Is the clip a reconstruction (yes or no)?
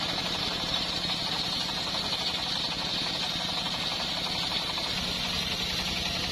no